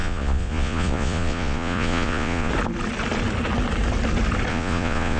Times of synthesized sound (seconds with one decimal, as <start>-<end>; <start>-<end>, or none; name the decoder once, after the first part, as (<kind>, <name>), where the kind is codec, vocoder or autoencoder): 0.0-2.5 (vocoder, Vocos); 4.5-5.2